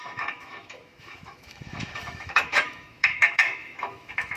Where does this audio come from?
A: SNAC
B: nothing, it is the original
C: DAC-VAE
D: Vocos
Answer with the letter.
C